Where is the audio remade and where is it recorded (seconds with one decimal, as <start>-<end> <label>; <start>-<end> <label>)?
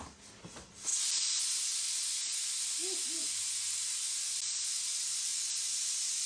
0.0-6.3 recorded